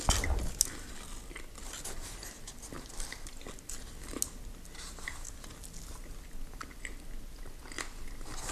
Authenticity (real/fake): real